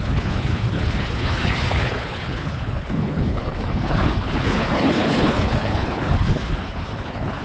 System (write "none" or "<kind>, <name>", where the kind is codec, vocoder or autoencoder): codec, HILCodec